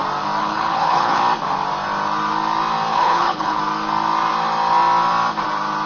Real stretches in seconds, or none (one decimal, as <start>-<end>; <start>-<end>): 0.0-0.4; 1.2-2.9; 3.6-5.9